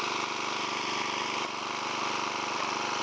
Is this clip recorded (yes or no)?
yes